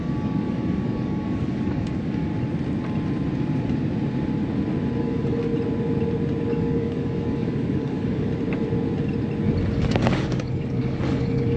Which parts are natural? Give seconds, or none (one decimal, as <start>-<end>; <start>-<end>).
2.3-5.0; 5.5-6.5; 8.3-9.7